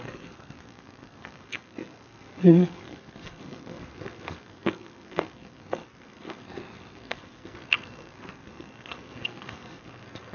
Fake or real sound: fake